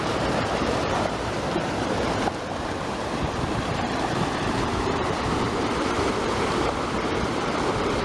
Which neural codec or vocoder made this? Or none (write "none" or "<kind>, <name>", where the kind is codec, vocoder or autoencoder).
vocoder, BigVGAN v2